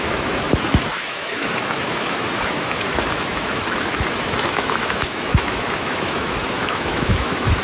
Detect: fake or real fake